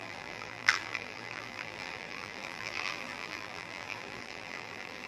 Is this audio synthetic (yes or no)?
yes